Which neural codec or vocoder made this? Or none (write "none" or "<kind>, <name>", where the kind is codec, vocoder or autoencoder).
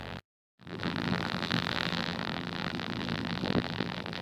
vocoder, BigVGAN v2